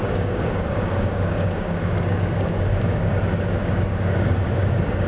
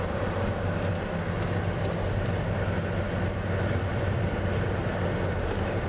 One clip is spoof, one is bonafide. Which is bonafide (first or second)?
second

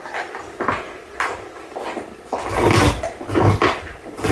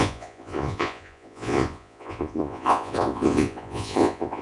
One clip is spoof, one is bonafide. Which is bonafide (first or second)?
first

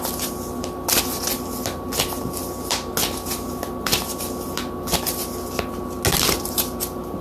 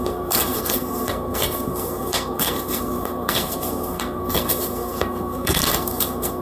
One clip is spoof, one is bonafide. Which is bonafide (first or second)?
first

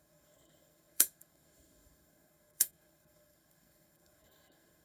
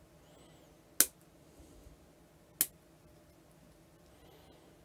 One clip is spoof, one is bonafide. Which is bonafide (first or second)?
second